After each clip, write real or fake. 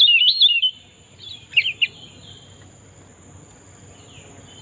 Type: real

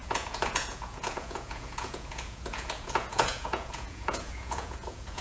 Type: fake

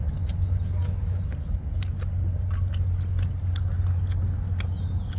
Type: real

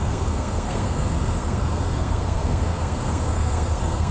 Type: fake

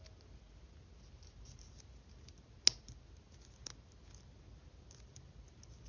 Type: real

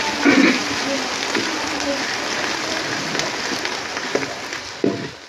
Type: real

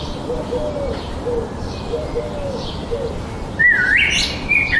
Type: real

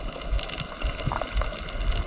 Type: real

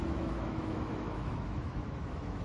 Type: fake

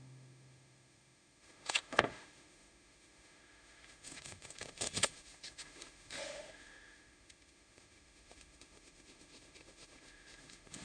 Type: fake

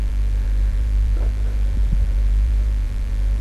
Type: fake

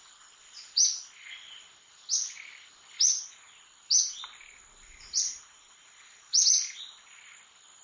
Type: real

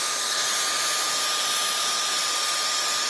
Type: real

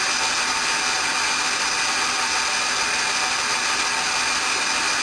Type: real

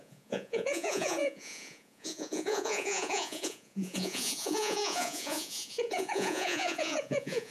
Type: fake